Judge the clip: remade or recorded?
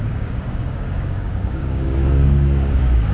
remade